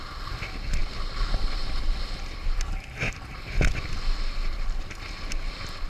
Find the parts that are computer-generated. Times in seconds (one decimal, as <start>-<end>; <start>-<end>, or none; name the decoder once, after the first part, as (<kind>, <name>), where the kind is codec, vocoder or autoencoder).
none